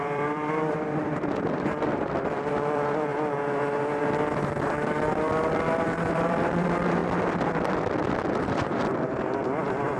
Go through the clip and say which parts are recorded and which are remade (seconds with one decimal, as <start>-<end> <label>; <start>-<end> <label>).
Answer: 0.0-3.1 remade; 3.1-6.1 recorded; 6.1-7.0 remade; 7.0-8.4 recorded; 8.4-10.0 remade